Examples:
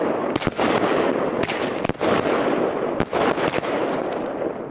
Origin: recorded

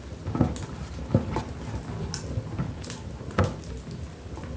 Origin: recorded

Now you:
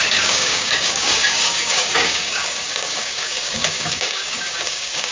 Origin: remade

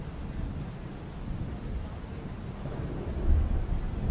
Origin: recorded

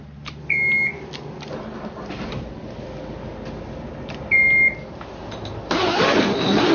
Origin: recorded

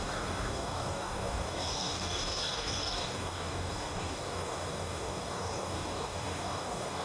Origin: remade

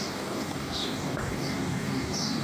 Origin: remade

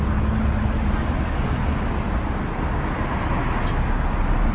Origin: recorded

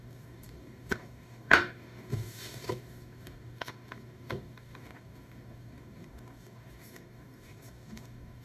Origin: remade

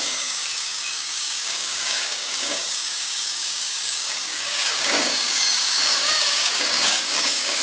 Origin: remade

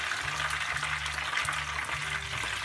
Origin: recorded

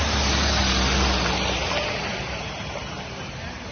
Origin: recorded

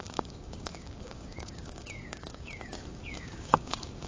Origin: remade